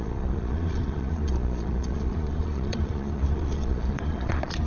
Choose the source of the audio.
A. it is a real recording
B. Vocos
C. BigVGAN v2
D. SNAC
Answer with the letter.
B